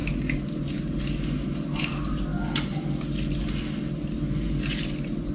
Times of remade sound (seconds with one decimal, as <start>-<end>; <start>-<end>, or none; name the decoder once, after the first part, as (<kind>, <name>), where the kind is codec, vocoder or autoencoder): none